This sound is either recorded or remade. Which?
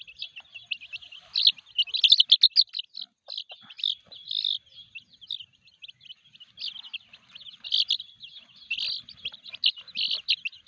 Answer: recorded